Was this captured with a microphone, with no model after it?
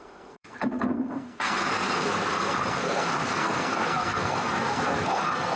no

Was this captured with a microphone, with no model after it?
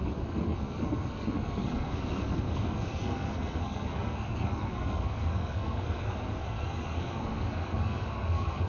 no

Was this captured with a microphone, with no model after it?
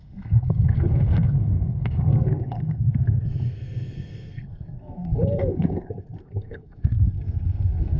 no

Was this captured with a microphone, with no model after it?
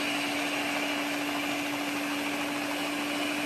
yes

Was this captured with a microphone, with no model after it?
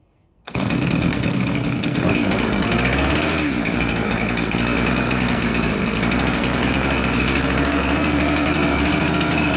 no